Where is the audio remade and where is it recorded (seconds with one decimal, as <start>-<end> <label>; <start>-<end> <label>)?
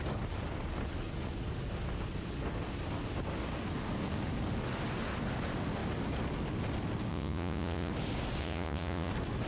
0.0-7.1 recorded; 7.1-7.9 remade; 7.9-8.4 recorded; 8.4-9.1 remade; 9.1-9.5 recorded